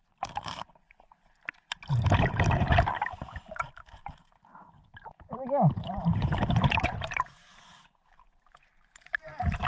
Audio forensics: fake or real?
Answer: fake